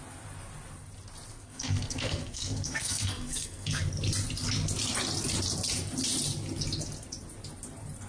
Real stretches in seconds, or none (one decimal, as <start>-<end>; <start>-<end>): 0.0-1.3; 3.8-8.1